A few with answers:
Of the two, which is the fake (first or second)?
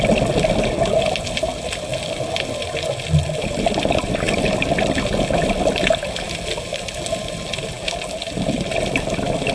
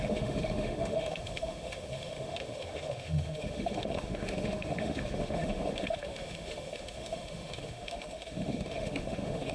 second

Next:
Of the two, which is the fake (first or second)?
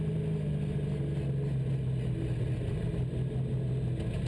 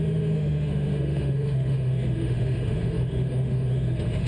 second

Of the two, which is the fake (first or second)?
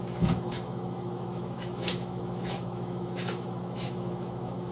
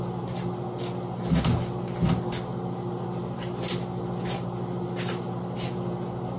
first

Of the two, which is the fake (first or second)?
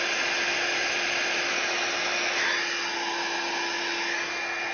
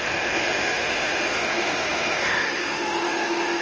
second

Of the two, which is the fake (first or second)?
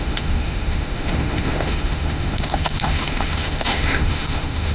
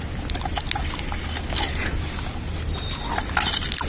first